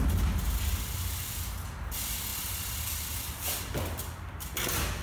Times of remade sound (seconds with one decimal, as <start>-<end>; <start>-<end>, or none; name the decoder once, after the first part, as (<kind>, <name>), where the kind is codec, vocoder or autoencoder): none

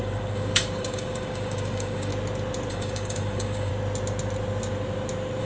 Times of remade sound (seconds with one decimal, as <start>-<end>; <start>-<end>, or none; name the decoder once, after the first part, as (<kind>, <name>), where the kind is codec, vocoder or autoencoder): 0.0-2.1 (codec, DAC); 2.7-3.7

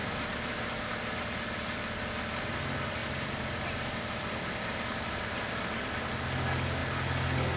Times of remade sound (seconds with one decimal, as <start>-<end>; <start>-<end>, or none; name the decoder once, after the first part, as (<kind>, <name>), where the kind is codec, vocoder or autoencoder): none

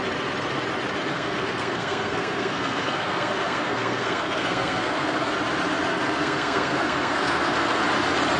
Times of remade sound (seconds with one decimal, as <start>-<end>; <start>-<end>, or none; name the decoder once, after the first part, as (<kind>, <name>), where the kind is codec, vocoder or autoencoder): 1.1-5.3 (codec, SNAC); 5.9-7.8